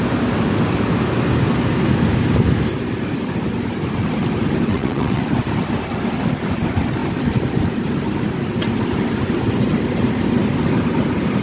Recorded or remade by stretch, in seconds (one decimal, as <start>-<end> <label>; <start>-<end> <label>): 0.0-4.7 recorded; 4.7-5.2 remade; 5.2-11.4 recorded